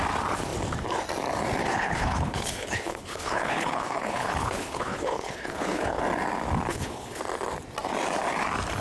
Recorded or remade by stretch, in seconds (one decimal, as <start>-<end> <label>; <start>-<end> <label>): 0.0-1.6 recorded; 1.6-6.0 remade; 6.0-6.7 recorded; 6.7-7.2 remade; 7.2-8.8 recorded